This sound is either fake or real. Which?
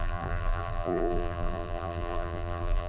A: fake